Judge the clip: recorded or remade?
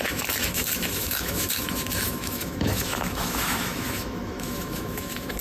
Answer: remade